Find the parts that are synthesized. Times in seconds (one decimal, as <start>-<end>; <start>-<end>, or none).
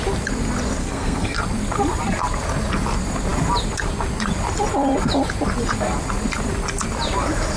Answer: 0.8-1.4